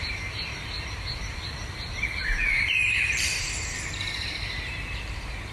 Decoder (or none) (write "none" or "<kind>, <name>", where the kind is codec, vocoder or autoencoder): vocoder, BigVGAN v2